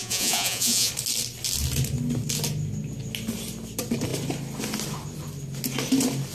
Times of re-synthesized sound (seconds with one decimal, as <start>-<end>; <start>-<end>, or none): 0.0-0.9